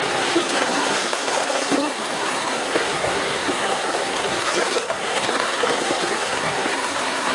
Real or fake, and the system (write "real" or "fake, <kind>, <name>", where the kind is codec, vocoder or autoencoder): fake, codec, SNAC